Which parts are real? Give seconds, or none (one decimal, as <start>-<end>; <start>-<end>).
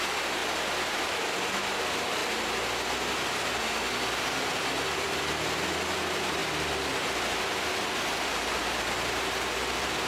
0.0-10.1